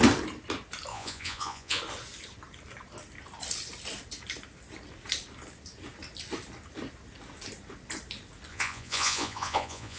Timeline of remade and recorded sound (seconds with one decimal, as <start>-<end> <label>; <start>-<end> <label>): 0.0-0.9 recorded; 0.9-1.8 remade; 1.8-8.5 recorded; 8.5-10.0 remade